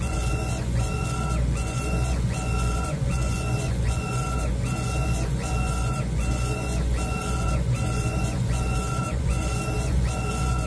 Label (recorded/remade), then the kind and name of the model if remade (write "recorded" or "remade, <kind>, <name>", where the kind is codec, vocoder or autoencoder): remade, vocoder, Vocos